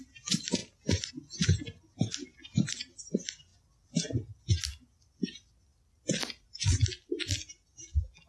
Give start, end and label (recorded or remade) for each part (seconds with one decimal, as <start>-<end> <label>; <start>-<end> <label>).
0.0-0.6 recorded; 0.6-1.1 remade; 1.1-2.3 recorded; 2.3-3.0 remade; 3.0-8.3 recorded